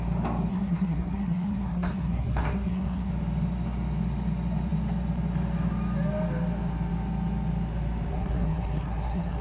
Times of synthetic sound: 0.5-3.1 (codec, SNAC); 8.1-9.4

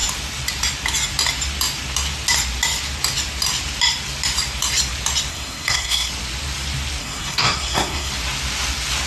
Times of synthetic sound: 5.3-6.1 (codec, SNAC); 7.0-8.1

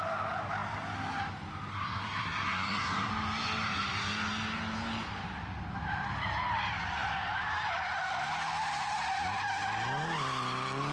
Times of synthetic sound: 1.7-3.1 (codec, SNAC)

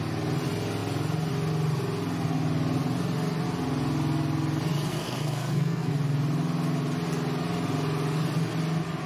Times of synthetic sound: 4.9-5.9 (codec, SNAC)

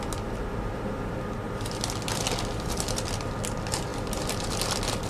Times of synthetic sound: none